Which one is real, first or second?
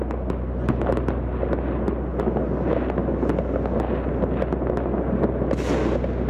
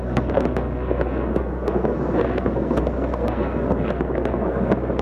first